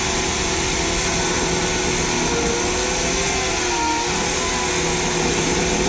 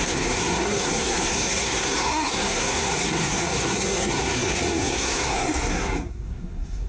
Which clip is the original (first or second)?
first